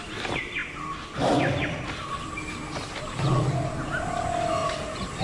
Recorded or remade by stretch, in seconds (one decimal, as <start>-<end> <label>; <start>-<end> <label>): 0.0-4.6 recorded; 4.6-5.2 remade